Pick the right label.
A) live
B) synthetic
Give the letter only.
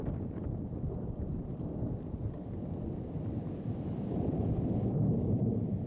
B